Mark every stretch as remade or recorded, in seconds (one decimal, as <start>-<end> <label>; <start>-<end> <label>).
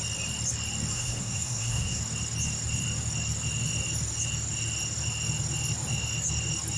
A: 0.0-0.9 recorded; 0.9-2.0 remade; 2.0-6.8 recorded